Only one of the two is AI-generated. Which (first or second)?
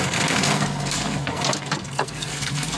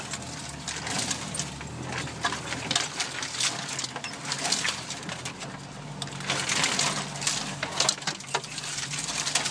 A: first